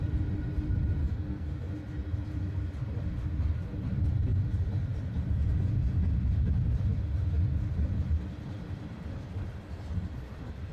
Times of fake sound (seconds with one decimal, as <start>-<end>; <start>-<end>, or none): 1.0-1.7